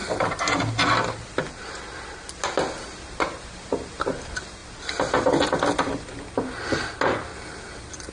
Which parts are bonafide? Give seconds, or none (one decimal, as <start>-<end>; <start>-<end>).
1.6-4.6; 5.9-8.1